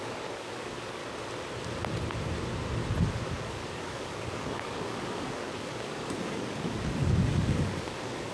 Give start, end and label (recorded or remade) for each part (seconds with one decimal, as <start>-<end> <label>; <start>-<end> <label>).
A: 0.0-1.0 remade; 1.0-3.1 recorded; 3.1-8.3 remade